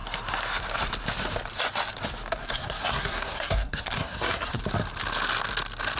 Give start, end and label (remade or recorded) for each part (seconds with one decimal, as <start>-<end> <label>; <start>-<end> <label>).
0.0-2.4 recorded; 2.4-4.6 remade; 4.6-6.0 recorded